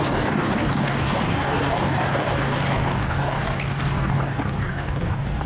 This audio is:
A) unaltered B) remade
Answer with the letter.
B